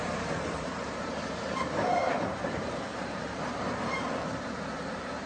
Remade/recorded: remade